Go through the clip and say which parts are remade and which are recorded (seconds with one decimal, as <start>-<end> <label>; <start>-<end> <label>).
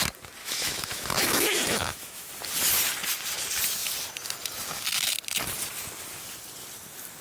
0.0-0.4 recorded; 0.4-2.3 remade; 2.3-7.2 recorded